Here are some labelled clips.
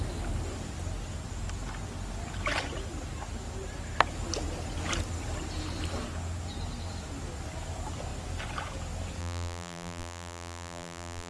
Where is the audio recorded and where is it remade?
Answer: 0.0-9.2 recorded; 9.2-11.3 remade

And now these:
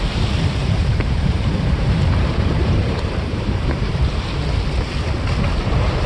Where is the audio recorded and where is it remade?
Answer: 0.0-0.6 recorded; 0.6-4.3 remade; 4.3-6.1 recorded

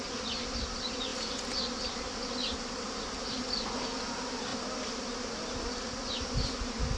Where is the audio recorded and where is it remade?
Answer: 0.0-4.5 recorded; 4.5-5.5 remade; 5.5-7.0 recorded

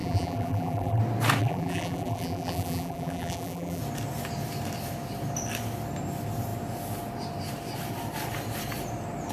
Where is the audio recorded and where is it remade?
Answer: 0.0-1.0 remade; 1.0-1.4 recorded; 1.4-3.8 remade; 3.8-9.3 recorded